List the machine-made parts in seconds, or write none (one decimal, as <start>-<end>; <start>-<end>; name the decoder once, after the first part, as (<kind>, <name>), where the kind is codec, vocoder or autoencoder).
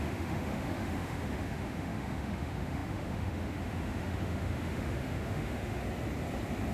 0.0-5.8 (autoencoder, DAC-VAE)